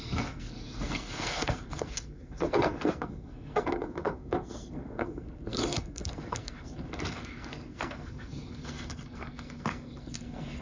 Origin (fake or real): fake